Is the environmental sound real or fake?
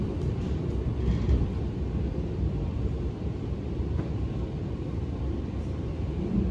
fake